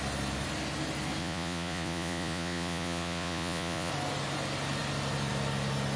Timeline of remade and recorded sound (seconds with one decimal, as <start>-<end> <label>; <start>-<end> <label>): 0.0-1.2 recorded; 1.2-3.9 remade; 3.9-6.0 recorded